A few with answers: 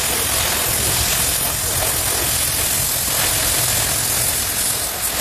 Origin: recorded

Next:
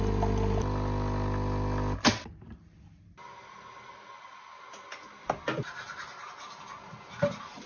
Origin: recorded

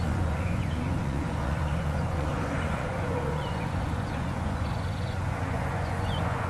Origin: remade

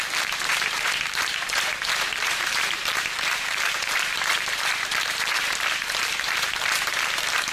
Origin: remade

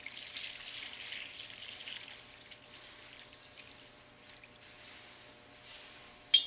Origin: recorded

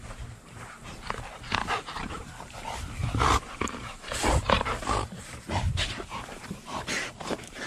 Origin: remade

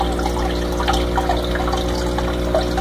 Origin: recorded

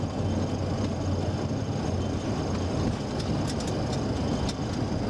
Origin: recorded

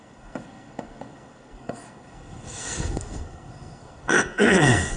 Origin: remade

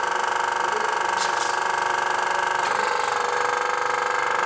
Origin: recorded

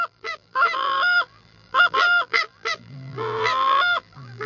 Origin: remade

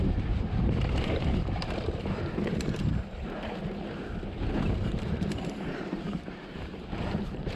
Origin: remade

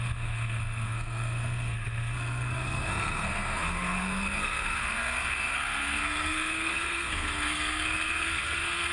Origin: remade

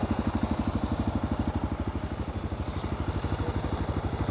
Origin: recorded